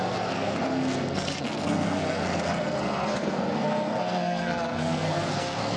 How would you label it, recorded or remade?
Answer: remade